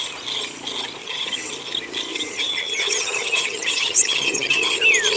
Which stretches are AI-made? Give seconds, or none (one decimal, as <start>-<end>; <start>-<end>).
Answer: 1.0-1.5; 2.1-4.8